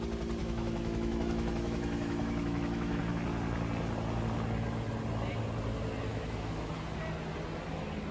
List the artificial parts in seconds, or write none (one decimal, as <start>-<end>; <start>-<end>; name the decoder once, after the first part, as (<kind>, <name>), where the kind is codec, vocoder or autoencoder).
0.4-3.0 (autoencoder, DAC-VAE); 6.1-6.7